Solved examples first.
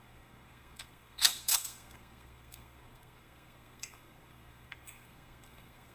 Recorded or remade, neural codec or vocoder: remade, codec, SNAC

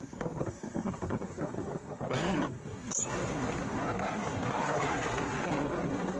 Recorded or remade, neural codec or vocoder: remade, codec, SNAC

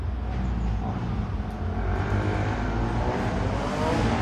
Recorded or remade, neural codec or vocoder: recorded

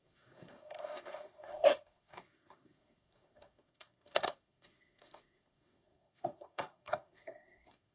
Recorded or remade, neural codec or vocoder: remade, codec, SNAC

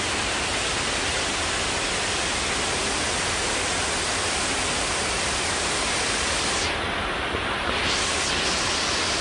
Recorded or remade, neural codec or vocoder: recorded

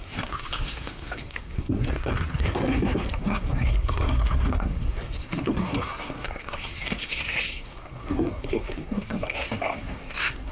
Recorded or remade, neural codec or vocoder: remade, codec, SNAC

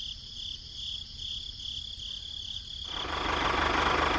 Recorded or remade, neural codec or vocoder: recorded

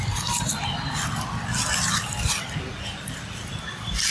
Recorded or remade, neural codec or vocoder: recorded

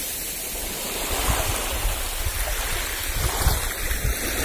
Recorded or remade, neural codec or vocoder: recorded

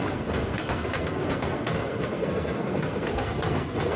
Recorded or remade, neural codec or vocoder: remade, codec, SNAC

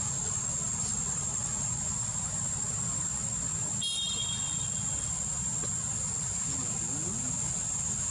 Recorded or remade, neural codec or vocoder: recorded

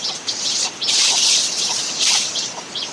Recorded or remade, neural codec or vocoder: recorded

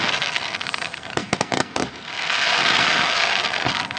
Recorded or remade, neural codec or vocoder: remade, codec, SNAC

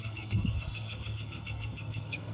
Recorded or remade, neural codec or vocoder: remade, codec, SNAC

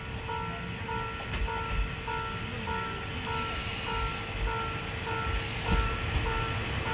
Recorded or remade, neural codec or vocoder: recorded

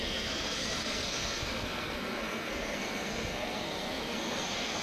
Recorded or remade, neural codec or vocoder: remade, codec, SNAC